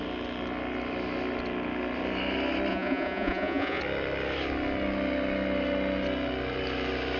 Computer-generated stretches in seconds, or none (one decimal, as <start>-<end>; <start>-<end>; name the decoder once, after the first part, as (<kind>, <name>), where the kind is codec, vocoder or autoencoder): 2.7-3.8 (vocoder, Vocos)

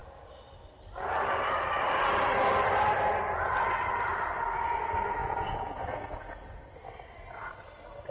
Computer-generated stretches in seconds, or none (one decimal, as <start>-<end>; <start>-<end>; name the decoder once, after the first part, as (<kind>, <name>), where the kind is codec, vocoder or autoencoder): 5.2-6.6 (vocoder, Vocos)

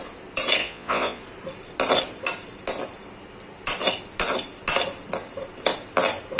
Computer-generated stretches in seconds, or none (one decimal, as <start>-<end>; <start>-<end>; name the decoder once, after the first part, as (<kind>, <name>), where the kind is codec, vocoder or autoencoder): 0.6-1.2 (vocoder, Vocos)

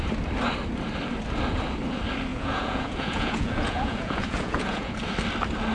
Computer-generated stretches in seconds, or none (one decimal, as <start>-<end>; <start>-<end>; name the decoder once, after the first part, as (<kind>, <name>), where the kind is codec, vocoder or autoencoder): 2.3-4.9 (vocoder, Vocos)

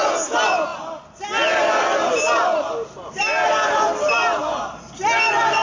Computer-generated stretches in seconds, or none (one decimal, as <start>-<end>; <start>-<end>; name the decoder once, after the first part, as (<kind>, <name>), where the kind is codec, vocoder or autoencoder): none

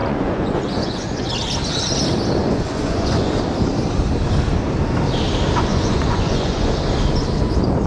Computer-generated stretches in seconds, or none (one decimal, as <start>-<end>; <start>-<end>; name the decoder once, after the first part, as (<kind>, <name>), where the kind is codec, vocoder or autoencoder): 0.0-1.3 (vocoder, Vocos); 2.4-3.3; 5.7-6.7